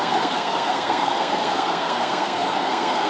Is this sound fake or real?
fake